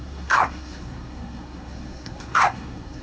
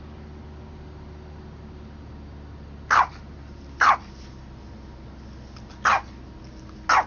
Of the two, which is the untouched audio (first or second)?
second